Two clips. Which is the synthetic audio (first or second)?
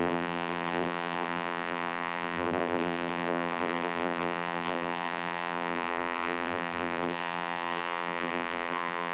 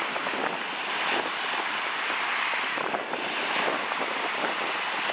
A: first